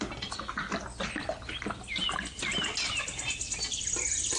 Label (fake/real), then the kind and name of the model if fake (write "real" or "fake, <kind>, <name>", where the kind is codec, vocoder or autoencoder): real